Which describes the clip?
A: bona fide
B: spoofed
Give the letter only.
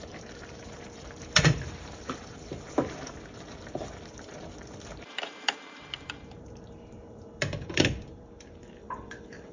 B